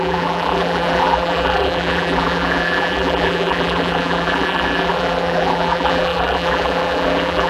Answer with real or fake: fake